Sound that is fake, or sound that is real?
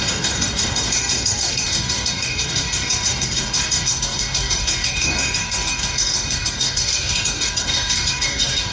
fake